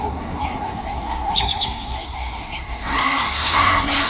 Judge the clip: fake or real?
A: fake